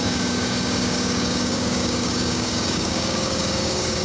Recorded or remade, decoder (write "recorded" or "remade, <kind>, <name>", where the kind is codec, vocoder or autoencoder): remade, codec, DAC